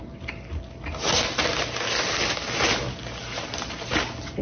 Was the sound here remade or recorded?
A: recorded